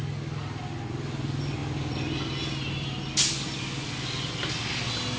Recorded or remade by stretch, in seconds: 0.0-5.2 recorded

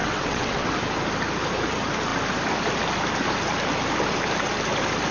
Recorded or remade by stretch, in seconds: 0.0-0.7 remade; 0.7-5.1 recorded

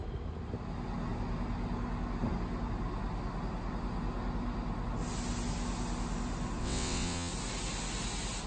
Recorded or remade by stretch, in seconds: 0.0-6.6 recorded; 6.6-7.3 remade; 7.3-8.5 recorded

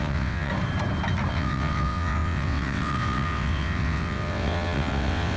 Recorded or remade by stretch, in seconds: 0.0-0.5 remade; 0.5-1.3 recorded; 1.3-5.4 remade

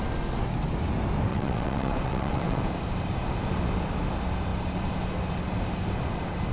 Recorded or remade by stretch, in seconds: 0.0-1.3 recorded; 1.3-2.6 remade; 2.6-6.5 recorded

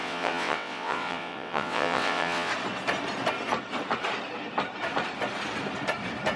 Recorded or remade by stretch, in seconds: 0.0-2.5 remade; 2.5-6.4 recorded